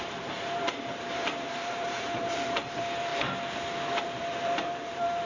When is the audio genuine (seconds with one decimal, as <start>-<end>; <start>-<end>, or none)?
3.1-4.0